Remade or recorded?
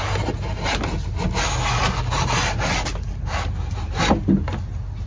recorded